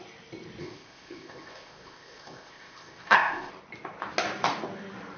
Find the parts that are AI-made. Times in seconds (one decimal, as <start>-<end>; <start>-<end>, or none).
0.6-3.5